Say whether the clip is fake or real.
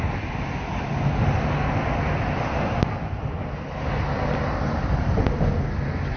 real